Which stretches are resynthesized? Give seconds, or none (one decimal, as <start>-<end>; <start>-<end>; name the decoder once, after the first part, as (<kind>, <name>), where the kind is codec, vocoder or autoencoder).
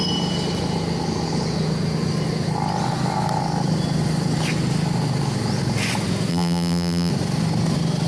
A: 6.3-7.1 (vocoder, BigVGAN v2)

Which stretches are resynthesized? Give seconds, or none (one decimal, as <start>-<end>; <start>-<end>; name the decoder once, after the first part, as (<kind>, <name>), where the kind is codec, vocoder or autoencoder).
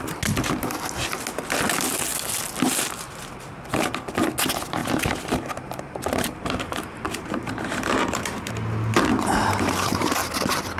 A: 4.8-8.5 (vocoder, BigVGAN v2); 9.1-10.1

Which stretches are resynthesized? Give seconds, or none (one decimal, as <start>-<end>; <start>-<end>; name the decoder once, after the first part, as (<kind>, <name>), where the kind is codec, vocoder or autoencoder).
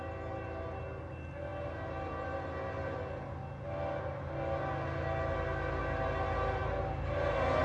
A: none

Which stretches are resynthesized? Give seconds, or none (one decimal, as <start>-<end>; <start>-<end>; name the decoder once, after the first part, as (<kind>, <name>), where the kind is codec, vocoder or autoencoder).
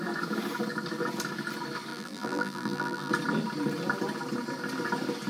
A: 1.9-3.1 (vocoder, BigVGAN v2)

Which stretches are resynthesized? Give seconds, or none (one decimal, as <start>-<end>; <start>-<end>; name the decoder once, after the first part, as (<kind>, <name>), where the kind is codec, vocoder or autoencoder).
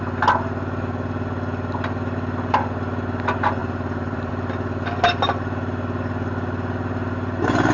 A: 3.6-4.3 (vocoder, BigVGAN v2)